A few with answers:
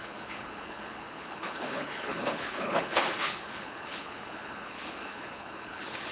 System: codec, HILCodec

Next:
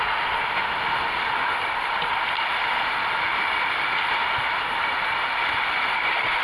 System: none